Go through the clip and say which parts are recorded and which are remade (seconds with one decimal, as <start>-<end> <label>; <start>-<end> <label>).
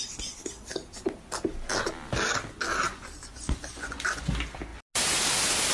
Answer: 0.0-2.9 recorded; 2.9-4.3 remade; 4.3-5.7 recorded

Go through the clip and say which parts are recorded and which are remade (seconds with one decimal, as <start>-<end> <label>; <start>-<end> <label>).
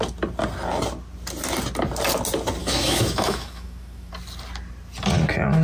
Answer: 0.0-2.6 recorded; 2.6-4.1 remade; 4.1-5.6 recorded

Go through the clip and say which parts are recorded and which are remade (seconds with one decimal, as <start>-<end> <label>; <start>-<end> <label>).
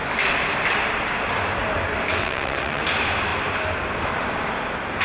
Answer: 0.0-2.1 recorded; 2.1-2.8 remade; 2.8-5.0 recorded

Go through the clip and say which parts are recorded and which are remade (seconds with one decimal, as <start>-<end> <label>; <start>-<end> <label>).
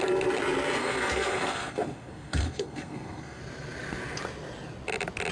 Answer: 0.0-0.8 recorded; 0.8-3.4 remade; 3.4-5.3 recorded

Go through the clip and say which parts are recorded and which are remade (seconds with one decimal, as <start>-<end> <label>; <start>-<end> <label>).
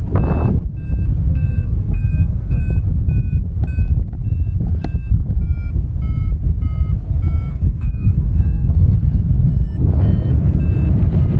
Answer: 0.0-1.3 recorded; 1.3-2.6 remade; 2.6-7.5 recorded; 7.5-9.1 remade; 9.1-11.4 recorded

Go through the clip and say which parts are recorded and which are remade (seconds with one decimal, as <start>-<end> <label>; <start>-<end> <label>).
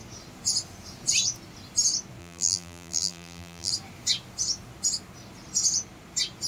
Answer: 0.0-2.2 recorded; 2.2-3.7 remade; 3.7-6.5 recorded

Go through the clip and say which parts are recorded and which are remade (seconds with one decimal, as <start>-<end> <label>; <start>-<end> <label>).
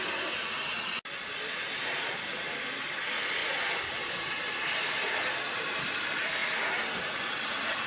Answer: 0.0-7.9 recorded